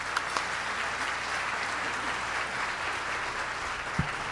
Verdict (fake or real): real